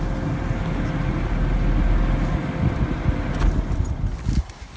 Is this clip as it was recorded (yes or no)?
yes